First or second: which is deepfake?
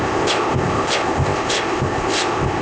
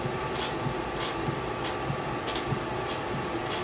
first